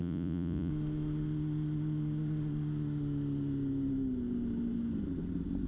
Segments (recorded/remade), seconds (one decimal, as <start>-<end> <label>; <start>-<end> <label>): 0.0-0.7 remade; 0.7-5.7 recorded